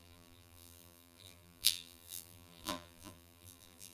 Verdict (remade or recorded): remade